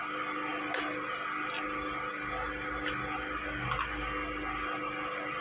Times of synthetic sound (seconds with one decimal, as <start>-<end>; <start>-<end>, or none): none